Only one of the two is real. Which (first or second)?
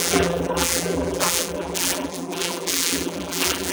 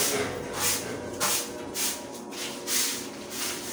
second